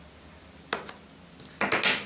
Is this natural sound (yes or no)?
yes